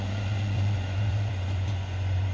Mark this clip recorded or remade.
remade